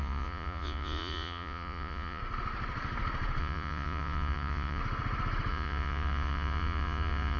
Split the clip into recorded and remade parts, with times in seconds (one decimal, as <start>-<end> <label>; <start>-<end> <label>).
0.0-2.2 remade; 2.2-3.4 recorded; 3.4-4.8 remade; 4.8-5.5 recorded; 5.5-7.4 remade